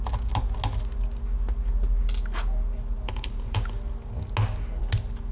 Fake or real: real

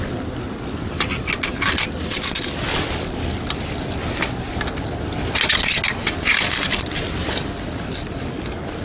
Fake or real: real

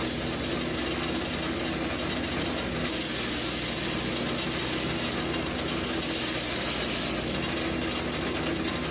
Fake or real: real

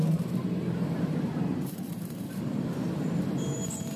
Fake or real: fake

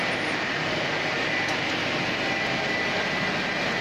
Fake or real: real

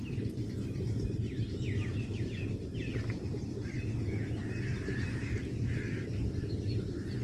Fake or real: real